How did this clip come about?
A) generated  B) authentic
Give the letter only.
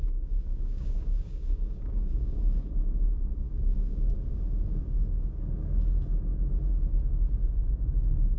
A